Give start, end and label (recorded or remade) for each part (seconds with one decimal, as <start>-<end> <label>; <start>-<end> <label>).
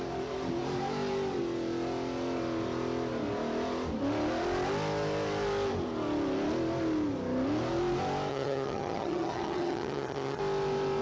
0.0-8.3 recorded; 8.3-10.4 remade; 10.4-11.0 recorded